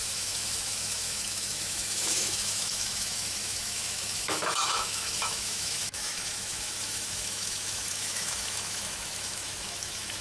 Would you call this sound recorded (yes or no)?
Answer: no